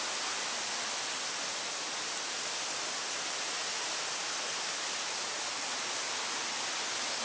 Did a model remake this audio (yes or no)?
no